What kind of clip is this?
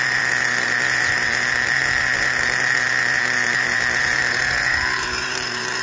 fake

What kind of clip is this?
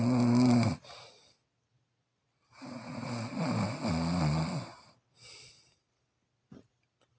real